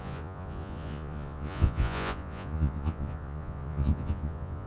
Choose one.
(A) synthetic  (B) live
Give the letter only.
A